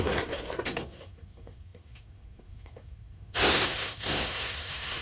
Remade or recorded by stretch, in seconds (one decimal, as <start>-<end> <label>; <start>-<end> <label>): 0.0-5.0 remade

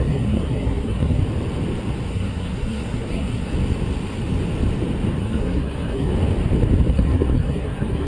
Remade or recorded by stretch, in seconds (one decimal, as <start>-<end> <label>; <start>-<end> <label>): 0.0-1.2 remade; 1.2-2.1 recorded; 2.1-3.5 remade; 3.5-5.2 recorded; 5.2-6.1 remade; 6.1-6.9 recorded; 6.9-8.1 remade

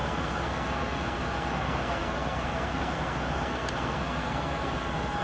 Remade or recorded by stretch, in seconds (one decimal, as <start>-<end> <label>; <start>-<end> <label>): 0.0-5.2 remade

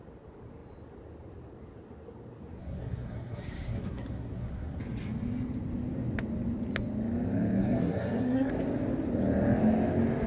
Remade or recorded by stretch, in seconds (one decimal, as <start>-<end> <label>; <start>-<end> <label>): 0.0-2.6 recorded; 2.6-4.8 remade; 4.8-7.6 recorded; 7.6-8.5 remade; 8.5-10.3 recorded

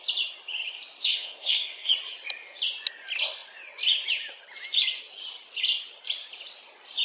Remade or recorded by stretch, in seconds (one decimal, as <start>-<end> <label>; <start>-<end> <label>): 0.0-1.0 recorded; 1.0-1.9 remade; 1.9-7.0 recorded